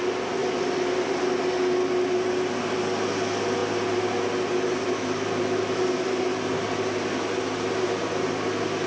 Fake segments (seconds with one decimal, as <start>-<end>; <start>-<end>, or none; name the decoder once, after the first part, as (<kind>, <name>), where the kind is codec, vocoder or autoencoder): none